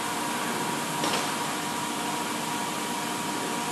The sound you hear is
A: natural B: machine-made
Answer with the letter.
A